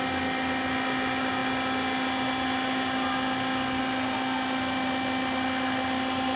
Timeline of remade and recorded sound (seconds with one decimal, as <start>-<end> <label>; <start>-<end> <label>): 0.0-6.4 recorded